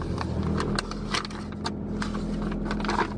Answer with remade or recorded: recorded